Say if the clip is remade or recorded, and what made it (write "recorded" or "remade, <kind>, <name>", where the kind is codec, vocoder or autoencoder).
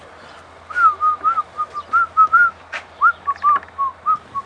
recorded